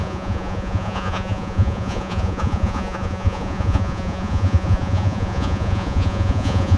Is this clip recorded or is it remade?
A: remade